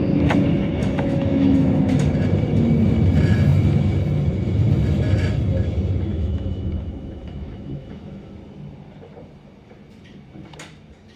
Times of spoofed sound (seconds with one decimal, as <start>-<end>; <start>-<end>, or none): 0.8-1.8; 6.1-8.3